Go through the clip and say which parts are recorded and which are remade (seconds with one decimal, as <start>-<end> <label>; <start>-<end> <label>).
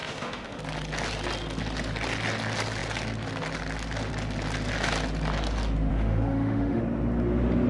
0.0-0.6 remade; 0.6-5.9 recorded; 5.9-6.8 remade; 6.8-7.7 recorded